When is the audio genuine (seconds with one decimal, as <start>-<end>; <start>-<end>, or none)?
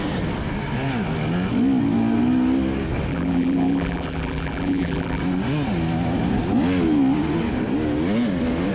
0.0-3.1; 5.2-8.7